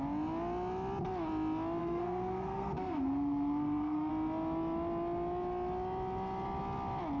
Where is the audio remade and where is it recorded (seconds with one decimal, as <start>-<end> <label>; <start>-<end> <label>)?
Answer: 0.0-1.8 recorded; 1.8-4.1 remade; 4.1-7.2 recorded